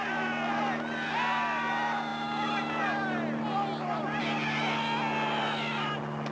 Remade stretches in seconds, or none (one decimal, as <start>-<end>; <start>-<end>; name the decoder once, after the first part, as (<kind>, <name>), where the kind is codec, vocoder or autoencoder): none